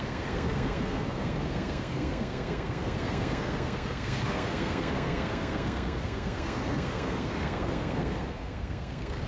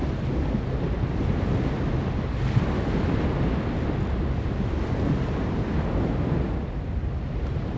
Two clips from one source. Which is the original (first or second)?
second